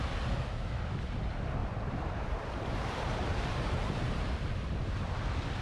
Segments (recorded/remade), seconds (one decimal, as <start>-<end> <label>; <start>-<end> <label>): 0.0-1.6 recorded; 1.6-5.0 remade; 5.0-5.6 recorded